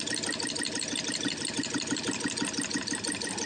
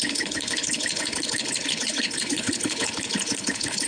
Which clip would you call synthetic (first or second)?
second